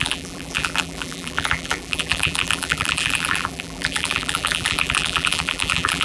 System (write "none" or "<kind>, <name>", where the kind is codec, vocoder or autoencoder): vocoder, BigVGAN v2